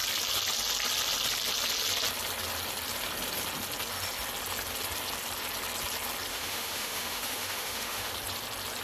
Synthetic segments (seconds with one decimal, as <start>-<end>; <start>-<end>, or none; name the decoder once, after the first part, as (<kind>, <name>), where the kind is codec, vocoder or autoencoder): 6.3-8.1 (autoencoder, DAC-VAE)